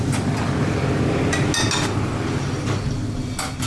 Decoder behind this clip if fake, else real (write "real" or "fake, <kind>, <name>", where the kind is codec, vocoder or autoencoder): real